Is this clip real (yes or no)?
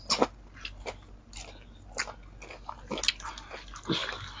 yes